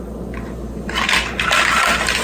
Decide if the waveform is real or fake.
real